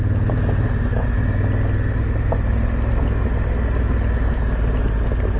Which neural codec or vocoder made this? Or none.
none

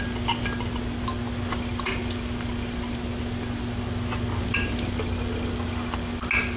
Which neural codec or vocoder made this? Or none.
none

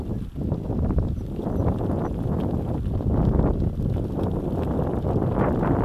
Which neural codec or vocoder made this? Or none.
none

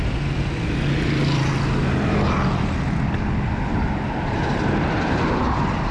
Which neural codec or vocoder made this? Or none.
none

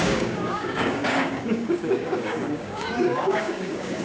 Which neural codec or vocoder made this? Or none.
codec, DAC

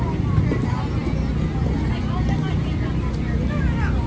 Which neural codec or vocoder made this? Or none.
none